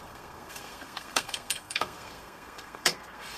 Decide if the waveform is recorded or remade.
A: remade